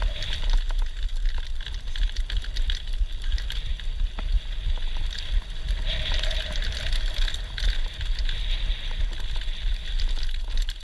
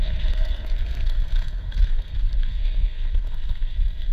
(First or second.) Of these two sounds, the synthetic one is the second